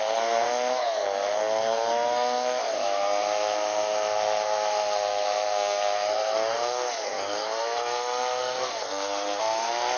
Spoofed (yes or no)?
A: yes